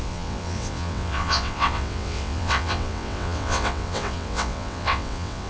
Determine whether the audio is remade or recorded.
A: remade